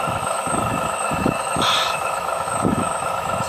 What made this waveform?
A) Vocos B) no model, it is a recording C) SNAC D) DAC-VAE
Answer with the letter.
D